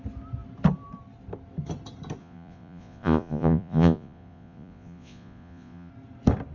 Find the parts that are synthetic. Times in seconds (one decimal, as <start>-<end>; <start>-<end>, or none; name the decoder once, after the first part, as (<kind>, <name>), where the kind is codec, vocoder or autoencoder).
2.2-5.9 (vocoder, Vocos)

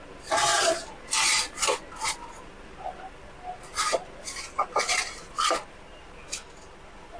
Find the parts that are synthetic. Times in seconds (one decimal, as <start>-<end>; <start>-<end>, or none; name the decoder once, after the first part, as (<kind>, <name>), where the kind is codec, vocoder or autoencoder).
none

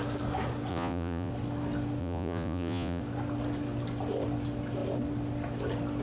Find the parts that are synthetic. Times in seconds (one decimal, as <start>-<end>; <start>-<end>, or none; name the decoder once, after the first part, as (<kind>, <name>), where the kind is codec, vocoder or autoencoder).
0.7-1.3 (vocoder, Vocos); 2.0-3.0

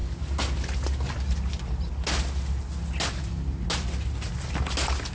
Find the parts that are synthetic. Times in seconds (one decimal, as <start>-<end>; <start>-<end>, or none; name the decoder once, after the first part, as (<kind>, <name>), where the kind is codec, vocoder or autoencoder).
none